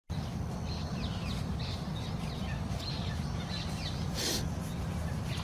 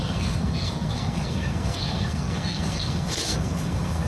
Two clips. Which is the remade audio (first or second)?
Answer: second